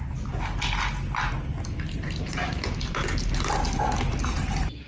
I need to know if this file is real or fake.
real